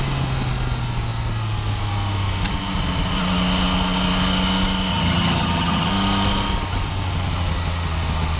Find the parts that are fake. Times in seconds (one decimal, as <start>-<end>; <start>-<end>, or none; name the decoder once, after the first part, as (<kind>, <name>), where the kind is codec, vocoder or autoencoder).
4.9-5.9 (vocoder, HiFi-GAN)